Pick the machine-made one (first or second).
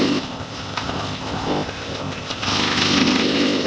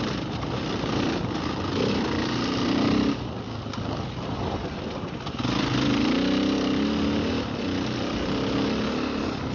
first